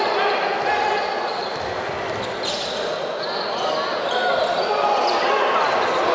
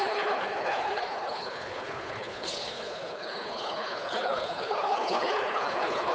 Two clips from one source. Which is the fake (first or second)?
second